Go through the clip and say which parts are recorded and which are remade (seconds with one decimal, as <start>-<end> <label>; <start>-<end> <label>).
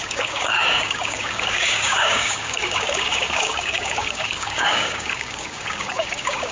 0.0-6.5 remade